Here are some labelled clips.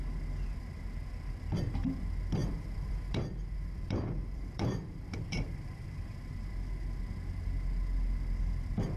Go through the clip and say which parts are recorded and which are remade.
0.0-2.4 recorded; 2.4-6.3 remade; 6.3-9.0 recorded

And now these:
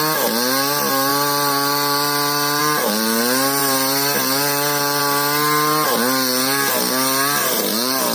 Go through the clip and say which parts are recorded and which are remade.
0.0-1.1 recorded; 1.1-2.6 remade; 2.6-3.6 recorded; 3.6-5.0 remade; 5.0-8.1 recorded

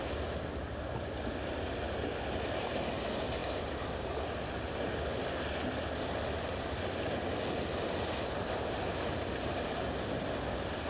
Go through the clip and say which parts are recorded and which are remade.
0.0-10.9 recorded

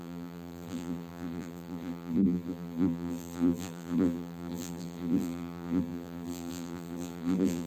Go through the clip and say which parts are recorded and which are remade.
0.0-7.7 remade